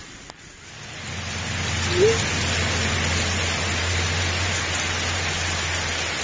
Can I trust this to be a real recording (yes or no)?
yes